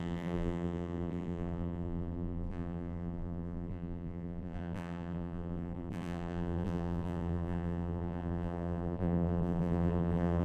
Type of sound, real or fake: fake